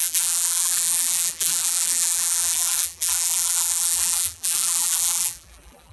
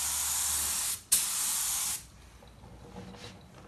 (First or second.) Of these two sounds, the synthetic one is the first